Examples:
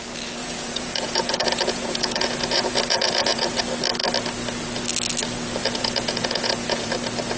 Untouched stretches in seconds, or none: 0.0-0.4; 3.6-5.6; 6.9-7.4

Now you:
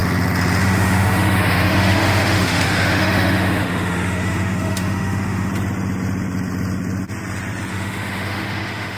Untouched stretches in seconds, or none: 0.0-0.6; 5.5-7.7

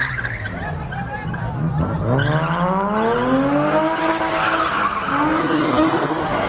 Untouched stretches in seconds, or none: 0.0-5.4

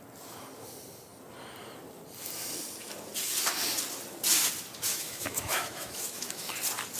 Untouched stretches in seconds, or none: 0.0-4.9; 6.5-7.0

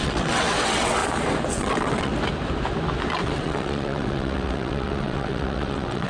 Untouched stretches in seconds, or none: 1.0-1.5; 2.1-3.1

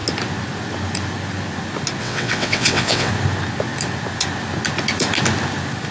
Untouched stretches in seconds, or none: 0.0-2.0; 3.1-5.9

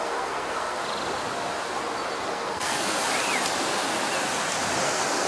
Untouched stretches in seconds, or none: 0.8-2.3; 3.0-4.8